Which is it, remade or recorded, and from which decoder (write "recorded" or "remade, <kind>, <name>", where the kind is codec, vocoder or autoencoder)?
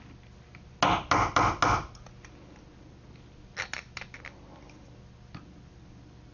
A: recorded